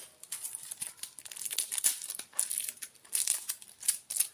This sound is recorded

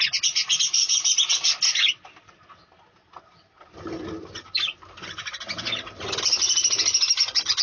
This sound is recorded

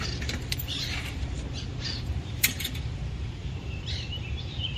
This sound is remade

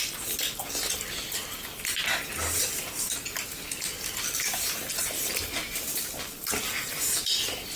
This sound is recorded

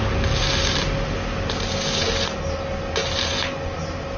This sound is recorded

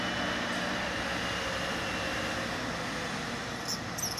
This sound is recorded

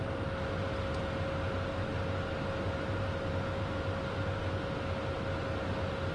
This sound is recorded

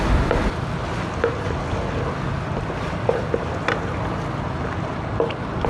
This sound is recorded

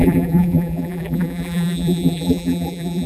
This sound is remade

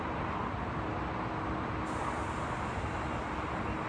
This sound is recorded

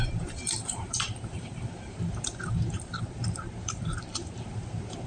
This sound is remade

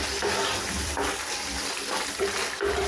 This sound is remade